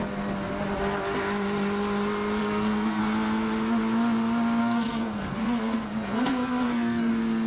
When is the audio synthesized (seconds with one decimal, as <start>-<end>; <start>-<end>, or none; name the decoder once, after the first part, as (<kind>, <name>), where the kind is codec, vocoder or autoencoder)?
2.4-3.0 (codec, SNAC); 4.6-7.1

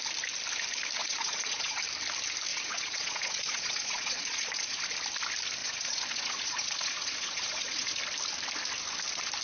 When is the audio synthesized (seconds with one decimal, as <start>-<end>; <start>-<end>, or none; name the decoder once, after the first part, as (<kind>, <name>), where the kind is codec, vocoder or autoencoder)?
1.0-1.8 (vocoder, Vocos); 2.5-4.8; 5.6-8.0

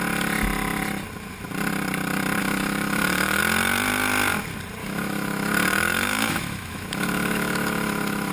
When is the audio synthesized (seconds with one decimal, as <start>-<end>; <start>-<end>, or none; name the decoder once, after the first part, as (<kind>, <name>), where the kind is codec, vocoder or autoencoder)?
2.4-3.4 (autoencoder, DAC-VAE); 4.8-8.3

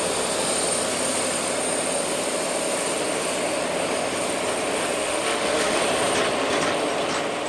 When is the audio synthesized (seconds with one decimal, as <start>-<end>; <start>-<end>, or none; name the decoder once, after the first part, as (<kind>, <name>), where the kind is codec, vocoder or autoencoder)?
5.0-5.8 (autoencoder, DAC-VAE)

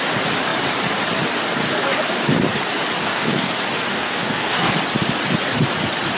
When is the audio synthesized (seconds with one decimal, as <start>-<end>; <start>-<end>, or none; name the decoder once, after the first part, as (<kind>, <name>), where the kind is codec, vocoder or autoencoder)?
3.0-3.5 (codec, DAC); 3.9-4.7

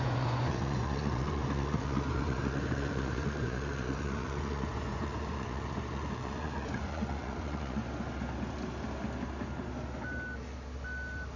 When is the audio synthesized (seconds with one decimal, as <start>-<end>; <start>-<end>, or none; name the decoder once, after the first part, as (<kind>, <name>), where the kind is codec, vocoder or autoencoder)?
0.0-7.8 (vocoder, Vocos)

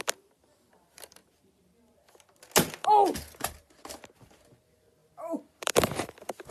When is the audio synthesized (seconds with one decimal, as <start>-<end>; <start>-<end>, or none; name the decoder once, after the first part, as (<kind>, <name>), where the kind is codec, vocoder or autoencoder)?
0.0-1.2 (vocoder, BigVGAN v2); 4.6-6.5